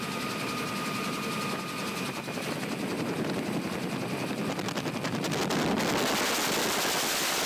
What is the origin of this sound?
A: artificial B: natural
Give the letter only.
B